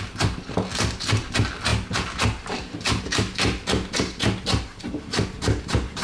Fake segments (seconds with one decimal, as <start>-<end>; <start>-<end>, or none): none